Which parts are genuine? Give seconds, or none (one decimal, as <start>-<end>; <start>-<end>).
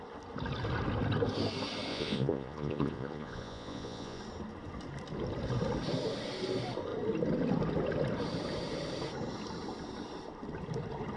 0.0-1.9; 4.2-11.2